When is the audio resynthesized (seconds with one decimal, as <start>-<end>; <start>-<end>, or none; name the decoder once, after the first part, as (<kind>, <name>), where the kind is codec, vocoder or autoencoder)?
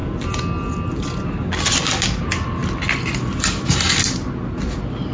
none